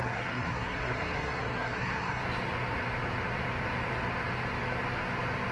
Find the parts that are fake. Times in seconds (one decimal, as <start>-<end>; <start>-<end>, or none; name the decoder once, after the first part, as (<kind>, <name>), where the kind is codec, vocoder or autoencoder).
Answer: 0.0-2.2 (codec, SNAC)